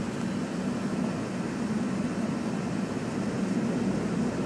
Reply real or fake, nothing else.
real